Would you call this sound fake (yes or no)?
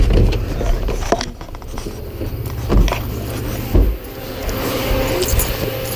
no